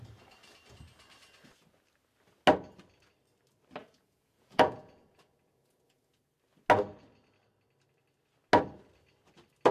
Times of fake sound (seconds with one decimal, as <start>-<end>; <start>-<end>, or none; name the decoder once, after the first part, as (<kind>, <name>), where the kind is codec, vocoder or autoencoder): 3.8-6.2 (vocoder, Vocos)